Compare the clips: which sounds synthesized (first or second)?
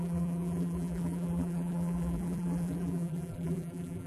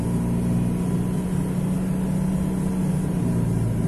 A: first